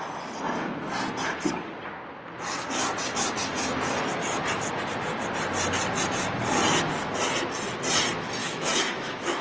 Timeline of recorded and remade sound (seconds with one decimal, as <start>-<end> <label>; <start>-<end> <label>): 0.0-8.4 recorded; 8.4-9.4 remade